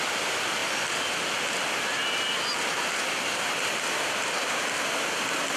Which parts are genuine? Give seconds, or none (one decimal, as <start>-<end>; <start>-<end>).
0.0-5.6